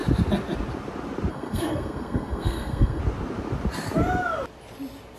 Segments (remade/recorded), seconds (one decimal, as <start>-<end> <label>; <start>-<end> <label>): 0.0-1.3 recorded; 1.3-3.0 remade; 3.0-5.2 recorded